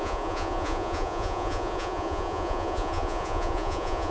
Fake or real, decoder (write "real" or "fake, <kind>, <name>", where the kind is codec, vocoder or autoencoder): fake, vocoder, Vocos